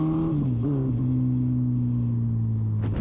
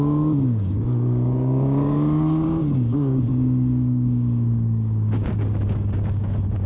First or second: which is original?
first